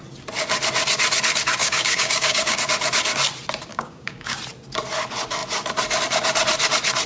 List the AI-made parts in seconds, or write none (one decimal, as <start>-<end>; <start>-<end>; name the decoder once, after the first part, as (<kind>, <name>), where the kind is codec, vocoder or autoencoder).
1.6-2.6 (codec, DAC); 3.7-4.4